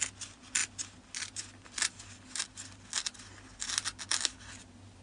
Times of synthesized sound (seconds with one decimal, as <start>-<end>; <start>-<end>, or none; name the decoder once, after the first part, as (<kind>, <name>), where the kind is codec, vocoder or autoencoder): none